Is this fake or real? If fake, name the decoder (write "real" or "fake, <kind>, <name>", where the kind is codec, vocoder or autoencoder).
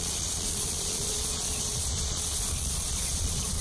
fake, vocoder, Vocos